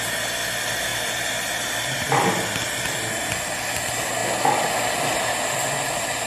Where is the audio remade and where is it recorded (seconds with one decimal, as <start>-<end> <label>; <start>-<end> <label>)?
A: 0.0-6.3 recorded